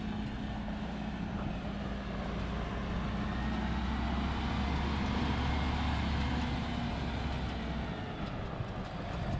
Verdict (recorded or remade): recorded